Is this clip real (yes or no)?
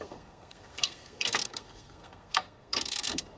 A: no